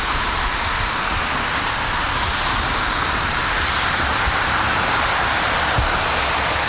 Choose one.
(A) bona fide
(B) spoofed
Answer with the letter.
A